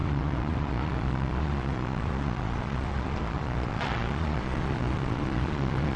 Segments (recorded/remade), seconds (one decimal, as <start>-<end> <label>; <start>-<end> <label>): 0.0-6.0 remade